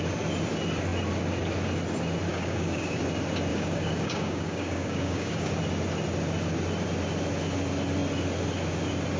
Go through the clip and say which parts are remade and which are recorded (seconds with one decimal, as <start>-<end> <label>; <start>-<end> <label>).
0.0-2.3 recorded; 2.3-3.0 remade; 3.0-3.5 recorded; 3.5-5.5 remade; 5.5-9.2 recorded

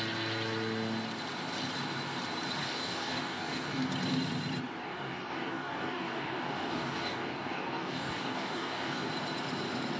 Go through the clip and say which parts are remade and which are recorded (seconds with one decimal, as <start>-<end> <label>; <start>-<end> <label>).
0.0-2.6 recorded; 2.6-3.9 remade; 3.9-4.8 recorded; 4.8-9.1 remade; 9.1-10.0 recorded

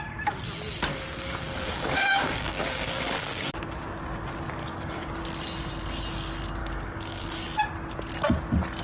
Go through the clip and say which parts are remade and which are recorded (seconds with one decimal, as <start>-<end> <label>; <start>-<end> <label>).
0.0-0.9 recorded; 0.9-3.5 remade; 3.5-4.6 recorded; 4.6-5.2 remade; 5.2-6.6 recorded; 6.6-7.4 remade; 7.4-8.8 recorded